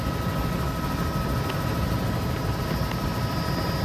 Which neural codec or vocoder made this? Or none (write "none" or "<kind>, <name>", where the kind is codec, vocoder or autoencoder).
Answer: none